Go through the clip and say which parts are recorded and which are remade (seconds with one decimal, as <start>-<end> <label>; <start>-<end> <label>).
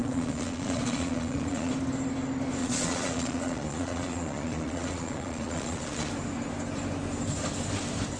0.0-1.7 remade; 1.7-2.6 recorded; 2.6-6.1 remade; 6.1-8.2 recorded